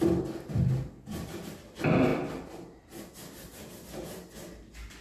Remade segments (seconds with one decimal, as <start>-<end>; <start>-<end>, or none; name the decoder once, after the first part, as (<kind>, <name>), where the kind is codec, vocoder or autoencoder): none